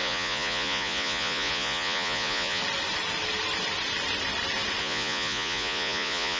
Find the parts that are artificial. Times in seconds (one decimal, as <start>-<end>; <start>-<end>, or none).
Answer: 0.0-2.6; 4.8-6.4